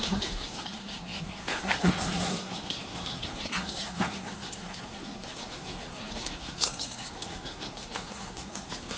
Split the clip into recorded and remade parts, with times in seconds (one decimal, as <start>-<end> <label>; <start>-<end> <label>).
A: 0.0-9.0 remade